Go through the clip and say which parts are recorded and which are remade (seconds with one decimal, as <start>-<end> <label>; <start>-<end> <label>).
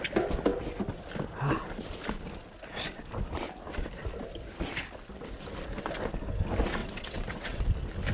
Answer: 0.0-6.8 recorded; 6.8-7.6 remade; 7.6-8.1 recorded